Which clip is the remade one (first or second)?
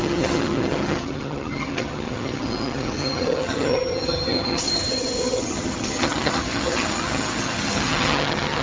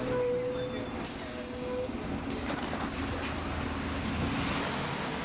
first